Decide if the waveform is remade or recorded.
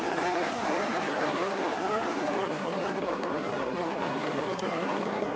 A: remade